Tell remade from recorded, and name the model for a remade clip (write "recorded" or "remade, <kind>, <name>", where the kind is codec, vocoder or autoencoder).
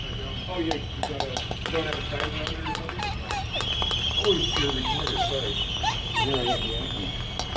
recorded